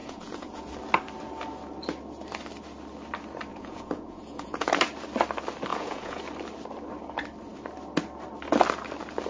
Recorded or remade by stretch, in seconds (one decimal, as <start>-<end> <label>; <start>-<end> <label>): 0.0-0.6 remade; 0.6-3.5 recorded; 3.5-4.7 remade; 4.7-5.7 recorded; 5.7-6.2 remade; 6.2-9.3 recorded